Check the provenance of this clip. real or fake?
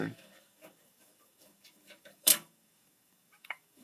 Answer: fake